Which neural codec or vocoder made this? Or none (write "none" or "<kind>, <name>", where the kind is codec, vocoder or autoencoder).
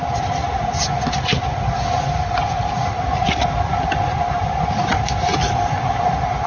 none